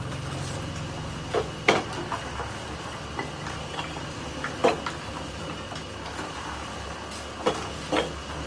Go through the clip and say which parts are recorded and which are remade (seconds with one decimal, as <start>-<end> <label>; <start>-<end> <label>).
0.0-8.5 recorded